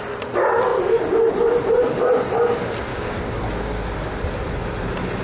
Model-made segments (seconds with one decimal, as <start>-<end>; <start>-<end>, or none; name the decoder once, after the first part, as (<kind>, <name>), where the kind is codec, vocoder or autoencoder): 2.9-3.5 (codec, DAC)